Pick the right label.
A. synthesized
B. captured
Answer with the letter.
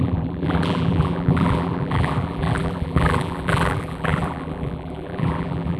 A